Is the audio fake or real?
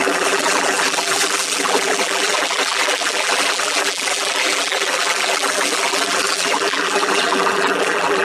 fake